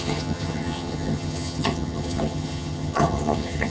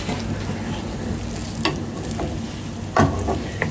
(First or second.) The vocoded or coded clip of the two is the first